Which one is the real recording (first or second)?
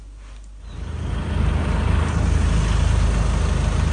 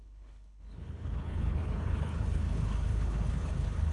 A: first